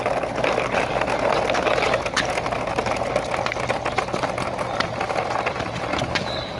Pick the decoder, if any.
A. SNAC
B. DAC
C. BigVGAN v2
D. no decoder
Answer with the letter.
D